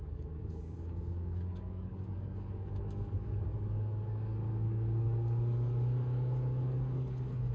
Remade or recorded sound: remade